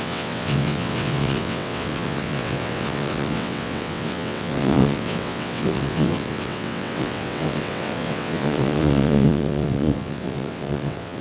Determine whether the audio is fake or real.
fake